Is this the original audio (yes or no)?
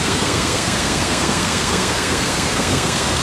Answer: no